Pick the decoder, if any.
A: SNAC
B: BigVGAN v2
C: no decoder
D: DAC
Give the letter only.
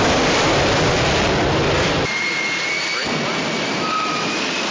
B